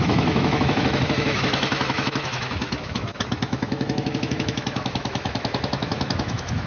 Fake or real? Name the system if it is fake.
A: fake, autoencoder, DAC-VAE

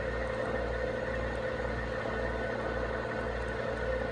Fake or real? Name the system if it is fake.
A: real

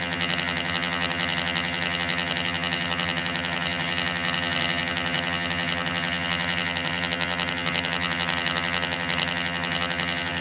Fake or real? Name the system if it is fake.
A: fake, vocoder, HiFi-GAN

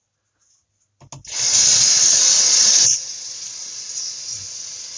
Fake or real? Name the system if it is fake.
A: real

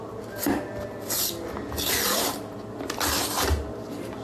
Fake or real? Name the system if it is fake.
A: real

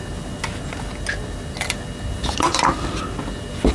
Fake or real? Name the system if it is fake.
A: real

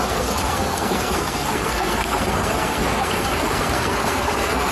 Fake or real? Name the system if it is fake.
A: fake, codec, SNAC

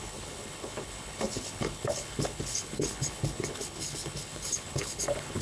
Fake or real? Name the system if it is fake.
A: fake, codec, HILCodec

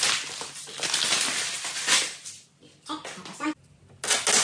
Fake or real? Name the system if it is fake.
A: real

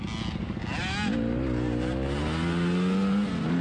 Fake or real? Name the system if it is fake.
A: real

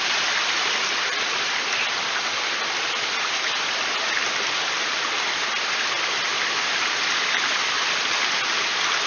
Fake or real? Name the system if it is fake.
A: real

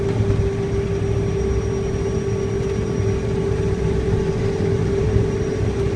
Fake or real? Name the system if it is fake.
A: real